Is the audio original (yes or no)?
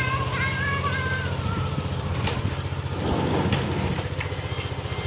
yes